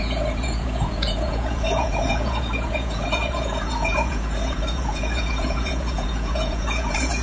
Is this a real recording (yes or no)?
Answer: no